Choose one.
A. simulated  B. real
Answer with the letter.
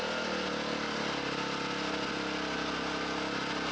B